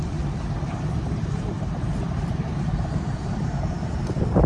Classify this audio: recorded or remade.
remade